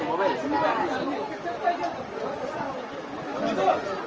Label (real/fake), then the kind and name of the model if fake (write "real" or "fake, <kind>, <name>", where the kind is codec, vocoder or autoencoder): real